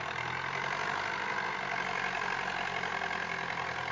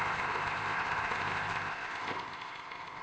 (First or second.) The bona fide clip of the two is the first